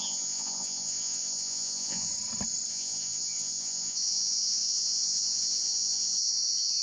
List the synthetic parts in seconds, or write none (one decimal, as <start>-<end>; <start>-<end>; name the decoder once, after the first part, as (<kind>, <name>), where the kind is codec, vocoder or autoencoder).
0.0-2.1 (vocoder, Vocos); 2.7-6.8